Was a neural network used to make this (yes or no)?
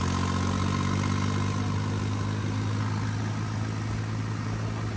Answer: no